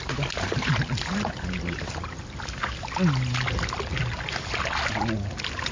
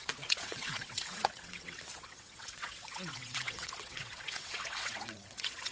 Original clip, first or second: first